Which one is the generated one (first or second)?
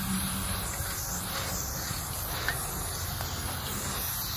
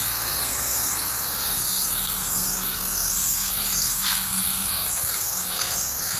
second